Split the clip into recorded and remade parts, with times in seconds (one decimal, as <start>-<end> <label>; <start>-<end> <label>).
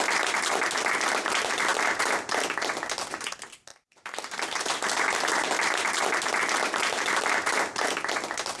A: 0.0-8.6 recorded